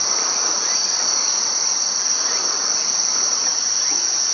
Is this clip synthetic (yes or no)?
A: no